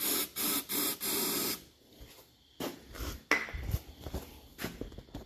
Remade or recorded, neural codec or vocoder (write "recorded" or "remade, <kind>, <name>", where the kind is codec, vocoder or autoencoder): recorded